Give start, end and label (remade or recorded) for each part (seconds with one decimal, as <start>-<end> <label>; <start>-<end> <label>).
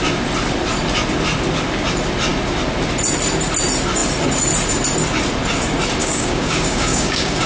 0.0-6.0 recorded; 6.0-7.5 remade